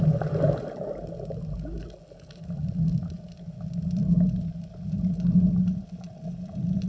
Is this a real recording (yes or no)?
yes